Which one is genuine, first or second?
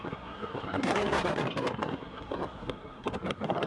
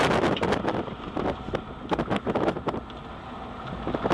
second